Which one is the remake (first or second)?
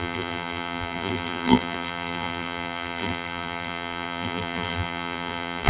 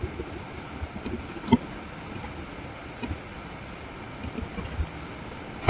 first